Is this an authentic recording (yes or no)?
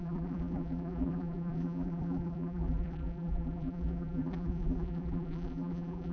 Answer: no